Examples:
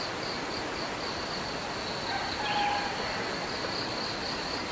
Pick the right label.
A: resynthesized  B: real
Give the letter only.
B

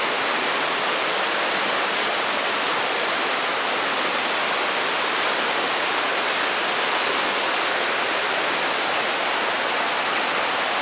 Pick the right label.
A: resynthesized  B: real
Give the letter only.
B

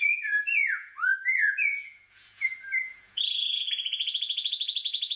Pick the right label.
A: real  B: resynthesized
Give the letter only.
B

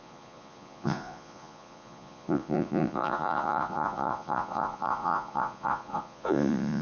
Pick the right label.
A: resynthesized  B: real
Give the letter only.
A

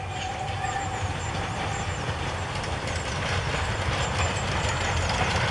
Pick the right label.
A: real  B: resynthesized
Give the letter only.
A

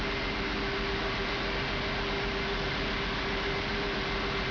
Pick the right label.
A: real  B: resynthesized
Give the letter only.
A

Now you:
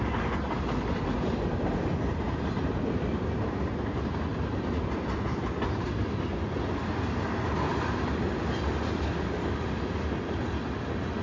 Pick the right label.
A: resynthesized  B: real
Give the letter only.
B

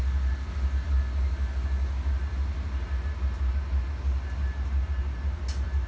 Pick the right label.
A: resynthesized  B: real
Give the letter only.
B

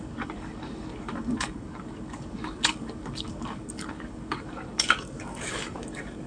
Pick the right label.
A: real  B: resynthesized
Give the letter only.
B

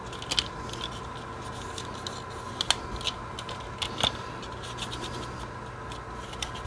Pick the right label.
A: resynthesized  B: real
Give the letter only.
B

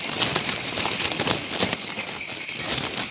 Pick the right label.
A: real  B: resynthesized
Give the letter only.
B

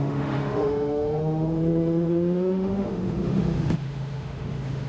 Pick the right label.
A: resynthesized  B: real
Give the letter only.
A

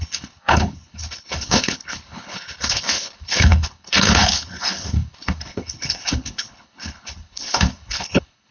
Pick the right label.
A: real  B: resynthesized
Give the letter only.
B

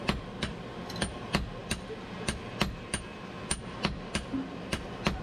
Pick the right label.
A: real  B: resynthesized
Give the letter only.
A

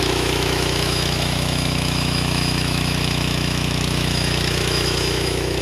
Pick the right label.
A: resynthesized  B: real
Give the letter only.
A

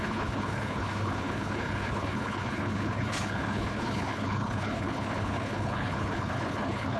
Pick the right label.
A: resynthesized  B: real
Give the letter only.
A